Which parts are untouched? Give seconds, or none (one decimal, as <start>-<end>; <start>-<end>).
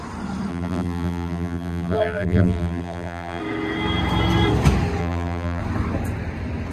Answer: 0.0-0.5; 3.4-5.0; 5.6-6.7